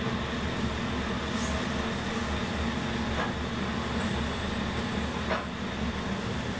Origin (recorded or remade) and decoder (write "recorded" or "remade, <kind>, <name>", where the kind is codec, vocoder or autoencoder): recorded